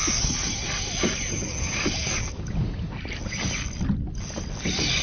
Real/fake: real